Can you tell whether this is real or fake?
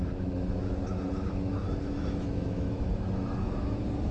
fake